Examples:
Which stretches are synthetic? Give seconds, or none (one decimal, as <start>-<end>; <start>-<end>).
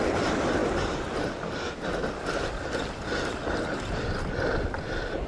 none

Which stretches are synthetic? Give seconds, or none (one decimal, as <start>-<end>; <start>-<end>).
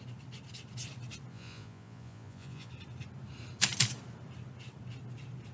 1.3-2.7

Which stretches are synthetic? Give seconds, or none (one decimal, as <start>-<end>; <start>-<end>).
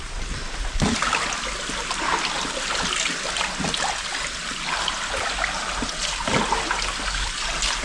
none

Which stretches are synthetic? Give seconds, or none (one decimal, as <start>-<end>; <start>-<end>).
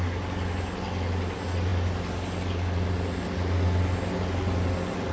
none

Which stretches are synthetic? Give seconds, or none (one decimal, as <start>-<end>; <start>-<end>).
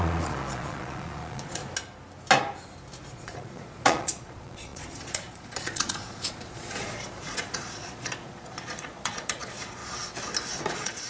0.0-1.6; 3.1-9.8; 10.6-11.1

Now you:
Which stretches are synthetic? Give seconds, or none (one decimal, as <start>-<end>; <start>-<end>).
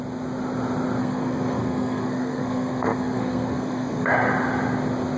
1.0-4.1